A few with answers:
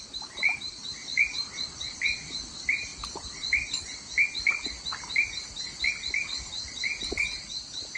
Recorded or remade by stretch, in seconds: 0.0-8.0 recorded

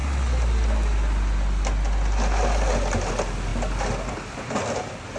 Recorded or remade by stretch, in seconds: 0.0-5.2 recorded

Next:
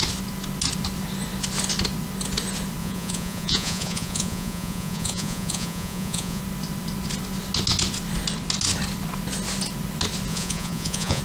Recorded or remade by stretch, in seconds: 0.0-2.8 recorded; 2.8-6.4 remade; 6.4-10.3 recorded; 10.3-11.2 remade

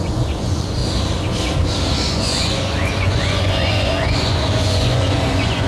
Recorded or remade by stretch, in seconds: 0.0-0.8 remade; 0.8-2.1 recorded; 2.1-5.7 remade

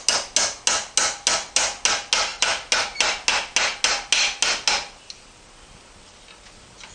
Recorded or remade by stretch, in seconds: 0.0-6.9 recorded